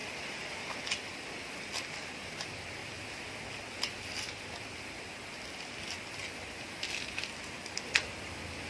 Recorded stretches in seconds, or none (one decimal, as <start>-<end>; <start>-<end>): 0.0-6.2